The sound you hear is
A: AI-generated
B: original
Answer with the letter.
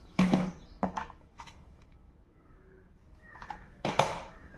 A